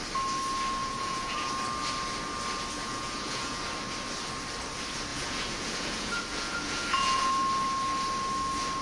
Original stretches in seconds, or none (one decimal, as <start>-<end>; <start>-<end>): 0.0-0.8; 1.5-2.8; 3.6-5.1; 7.3-8.8